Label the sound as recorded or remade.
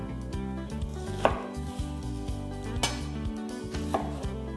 recorded